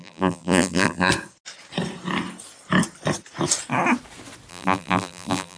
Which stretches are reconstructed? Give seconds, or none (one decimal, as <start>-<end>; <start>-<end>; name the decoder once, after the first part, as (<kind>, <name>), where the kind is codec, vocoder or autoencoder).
0.0-1.1 (vocoder, BigVGAN v2); 4.5-5.6